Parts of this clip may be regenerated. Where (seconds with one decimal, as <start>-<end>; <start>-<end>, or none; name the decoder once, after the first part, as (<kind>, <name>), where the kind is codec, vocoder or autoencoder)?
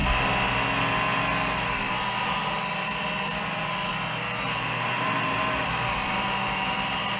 2.2-3.9 (vocoder, BigVGAN v2); 4.8-7.2